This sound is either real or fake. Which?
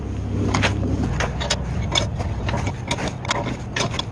real